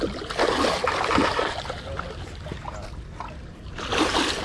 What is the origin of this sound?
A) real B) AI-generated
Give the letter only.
A